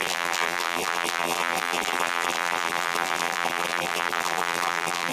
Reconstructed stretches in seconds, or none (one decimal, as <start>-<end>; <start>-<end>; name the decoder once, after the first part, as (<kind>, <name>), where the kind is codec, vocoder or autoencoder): 0.0-5.1 (vocoder, BigVGAN v2)